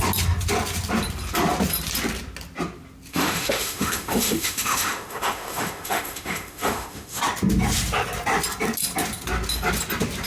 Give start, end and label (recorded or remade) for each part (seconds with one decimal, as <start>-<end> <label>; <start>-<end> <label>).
0.0-3.1 recorded; 3.1-7.2 remade; 7.2-10.3 recorded